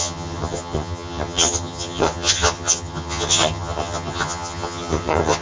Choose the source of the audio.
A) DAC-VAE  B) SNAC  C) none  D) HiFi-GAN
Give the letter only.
D